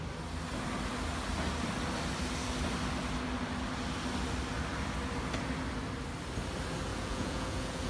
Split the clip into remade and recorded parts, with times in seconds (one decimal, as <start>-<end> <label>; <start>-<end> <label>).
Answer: 0.0-6.9 recorded; 6.9-7.9 remade